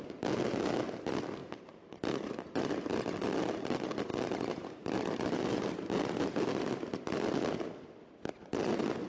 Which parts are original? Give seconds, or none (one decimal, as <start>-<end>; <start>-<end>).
0.0-1.4; 2.7-4.1; 5.4-9.1